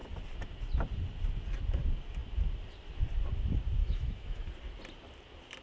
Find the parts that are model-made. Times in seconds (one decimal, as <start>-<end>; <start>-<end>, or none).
3.8-4.5